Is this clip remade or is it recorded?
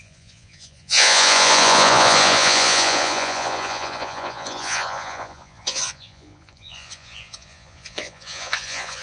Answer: remade